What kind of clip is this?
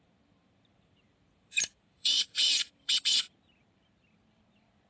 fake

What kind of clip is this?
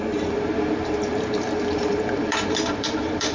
fake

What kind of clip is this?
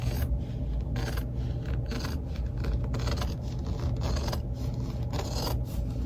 real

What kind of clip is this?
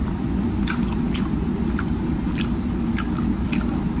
real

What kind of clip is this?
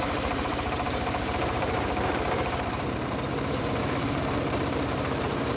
fake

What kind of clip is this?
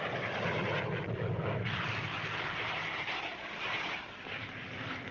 real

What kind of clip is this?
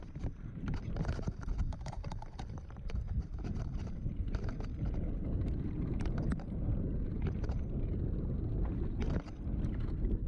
fake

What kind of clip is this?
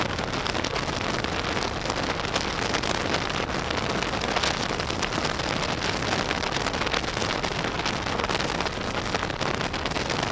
real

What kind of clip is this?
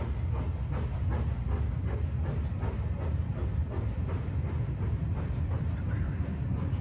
real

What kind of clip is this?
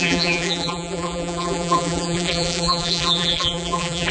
fake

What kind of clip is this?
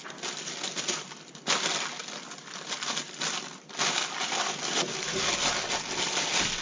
real